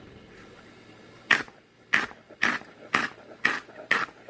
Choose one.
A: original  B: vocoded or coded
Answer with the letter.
A